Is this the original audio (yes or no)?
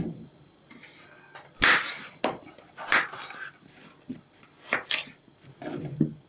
yes